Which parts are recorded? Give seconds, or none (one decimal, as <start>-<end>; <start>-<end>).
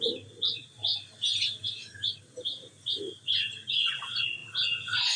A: 0.0-0.8; 3.9-5.2